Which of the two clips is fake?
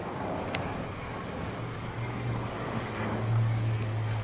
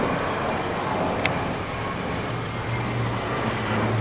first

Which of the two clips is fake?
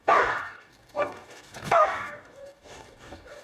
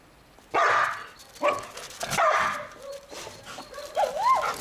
first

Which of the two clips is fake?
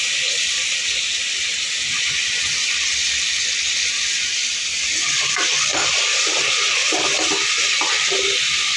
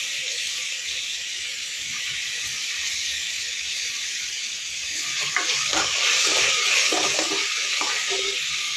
second